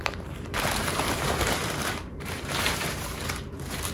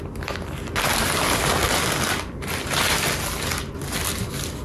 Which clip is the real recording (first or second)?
second